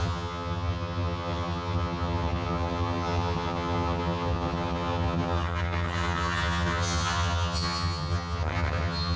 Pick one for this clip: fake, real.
fake